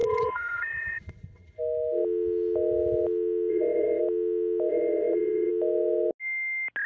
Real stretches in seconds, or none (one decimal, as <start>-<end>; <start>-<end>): 1.6-3.5; 4.0-4.7; 5.5-6.9